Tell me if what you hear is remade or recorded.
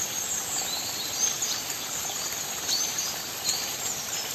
recorded